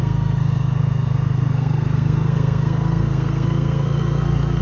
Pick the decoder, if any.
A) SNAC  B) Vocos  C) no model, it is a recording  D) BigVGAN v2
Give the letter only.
A